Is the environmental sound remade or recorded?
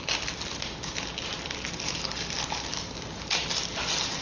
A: recorded